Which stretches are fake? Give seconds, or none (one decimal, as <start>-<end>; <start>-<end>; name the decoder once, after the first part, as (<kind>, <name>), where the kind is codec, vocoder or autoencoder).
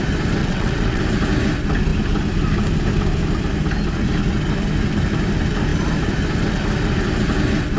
0.4-1.0 (vocoder, WaveNeXt)